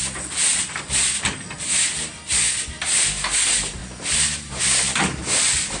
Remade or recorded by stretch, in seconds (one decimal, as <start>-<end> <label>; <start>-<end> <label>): 0.0-5.8 recorded